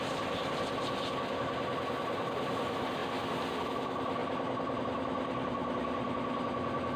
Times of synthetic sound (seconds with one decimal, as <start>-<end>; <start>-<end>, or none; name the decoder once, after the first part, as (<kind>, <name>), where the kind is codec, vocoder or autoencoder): none